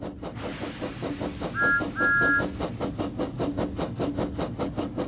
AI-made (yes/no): no